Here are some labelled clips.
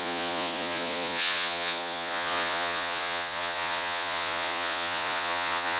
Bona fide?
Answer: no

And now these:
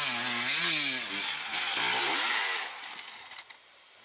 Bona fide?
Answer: yes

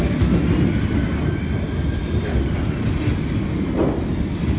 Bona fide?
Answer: yes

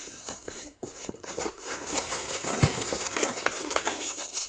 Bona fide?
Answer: no